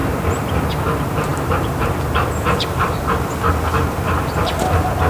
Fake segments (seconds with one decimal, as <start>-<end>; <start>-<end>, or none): 0.0-0.6; 1.3-3.0